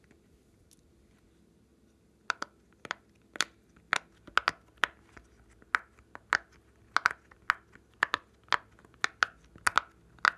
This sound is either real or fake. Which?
real